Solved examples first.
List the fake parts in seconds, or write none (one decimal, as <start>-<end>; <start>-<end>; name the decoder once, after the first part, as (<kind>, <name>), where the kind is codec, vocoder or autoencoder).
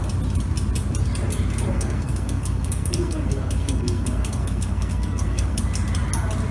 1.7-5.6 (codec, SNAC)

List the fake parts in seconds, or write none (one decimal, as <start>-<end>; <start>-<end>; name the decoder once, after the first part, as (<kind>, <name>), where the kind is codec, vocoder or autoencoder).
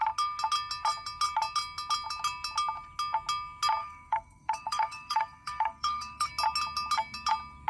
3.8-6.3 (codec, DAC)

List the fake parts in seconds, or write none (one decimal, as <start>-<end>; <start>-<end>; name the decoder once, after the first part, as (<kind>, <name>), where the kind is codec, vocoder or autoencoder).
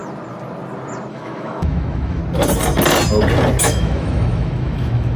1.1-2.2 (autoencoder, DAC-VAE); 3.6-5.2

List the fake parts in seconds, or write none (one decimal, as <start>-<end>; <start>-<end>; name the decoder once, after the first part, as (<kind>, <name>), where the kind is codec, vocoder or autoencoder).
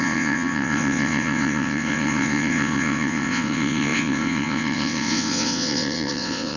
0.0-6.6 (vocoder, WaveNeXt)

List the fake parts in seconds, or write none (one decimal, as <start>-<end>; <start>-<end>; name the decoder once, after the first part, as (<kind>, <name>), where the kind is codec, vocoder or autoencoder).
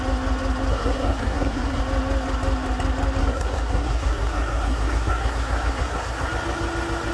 0.7-1.8 (codec, SNAC); 3.2-6.3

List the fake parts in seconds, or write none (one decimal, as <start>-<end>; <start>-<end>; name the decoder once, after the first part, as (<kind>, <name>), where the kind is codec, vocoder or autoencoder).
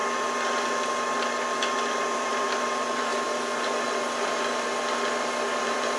2.0-3.1 (vocoder, BigVGAN v2); 5.6-6.0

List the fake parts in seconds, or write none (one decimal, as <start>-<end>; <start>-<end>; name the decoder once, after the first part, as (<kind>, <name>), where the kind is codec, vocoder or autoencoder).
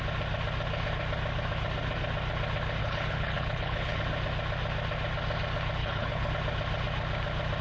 2.8-4.0 (codec, HILCodec); 5.8-6.3